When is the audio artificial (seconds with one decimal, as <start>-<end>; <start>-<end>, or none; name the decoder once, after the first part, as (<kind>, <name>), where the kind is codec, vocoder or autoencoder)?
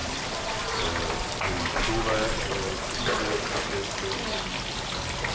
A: none